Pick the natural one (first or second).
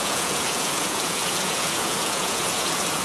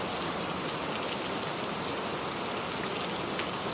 second